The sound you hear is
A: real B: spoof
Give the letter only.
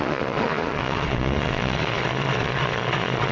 B